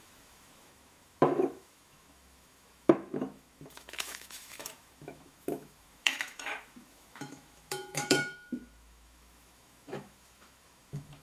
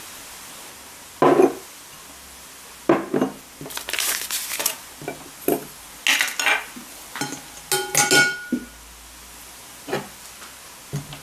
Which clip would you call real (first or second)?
second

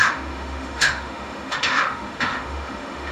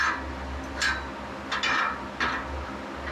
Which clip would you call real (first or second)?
second